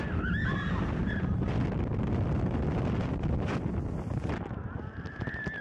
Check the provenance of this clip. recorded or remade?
recorded